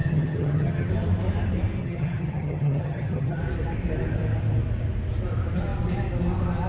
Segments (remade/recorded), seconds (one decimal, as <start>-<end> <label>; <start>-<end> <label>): 0.0-0.9 remade; 0.9-1.8 recorded; 1.8-3.4 remade; 3.4-6.7 recorded